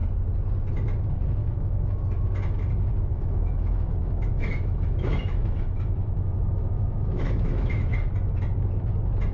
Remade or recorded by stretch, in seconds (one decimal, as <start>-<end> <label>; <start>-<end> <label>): 0.0-1.4 recorded; 1.4-2.0 remade; 2.0-3.1 recorded; 3.1-7.9 remade; 7.9-9.3 recorded